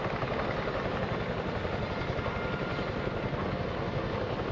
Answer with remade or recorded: recorded